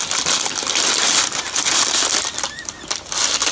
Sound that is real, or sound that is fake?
real